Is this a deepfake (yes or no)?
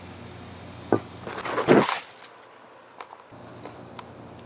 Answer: no